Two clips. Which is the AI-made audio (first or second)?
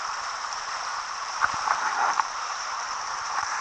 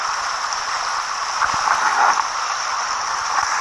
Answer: first